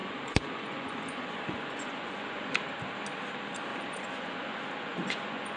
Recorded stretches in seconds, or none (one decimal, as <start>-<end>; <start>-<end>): 2.5-3.7

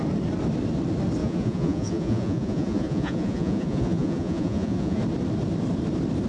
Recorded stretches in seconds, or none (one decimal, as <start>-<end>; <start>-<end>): 0.0-1.2; 5.0-6.3

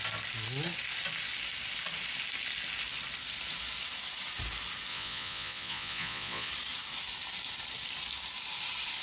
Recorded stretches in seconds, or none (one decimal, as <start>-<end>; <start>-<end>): 0.0-4.9; 6.5-9.0